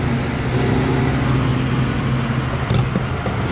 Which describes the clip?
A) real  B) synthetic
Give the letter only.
A